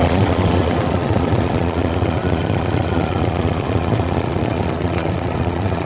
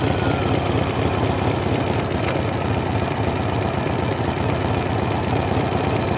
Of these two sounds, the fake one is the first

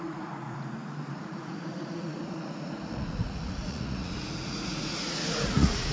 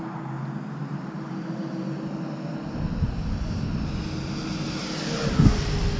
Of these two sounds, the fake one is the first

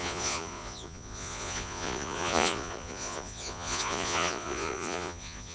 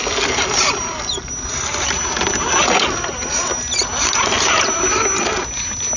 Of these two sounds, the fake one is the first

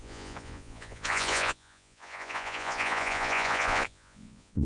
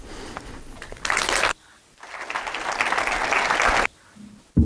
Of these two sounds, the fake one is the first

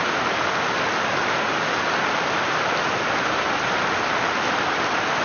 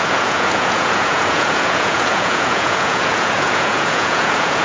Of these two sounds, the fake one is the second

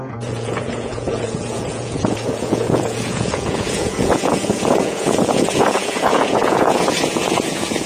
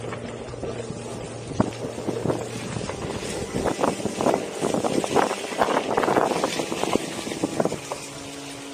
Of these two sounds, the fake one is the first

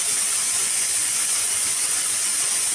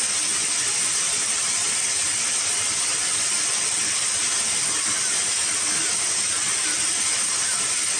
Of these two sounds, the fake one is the first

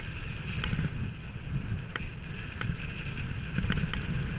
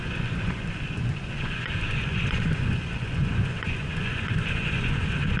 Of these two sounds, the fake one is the second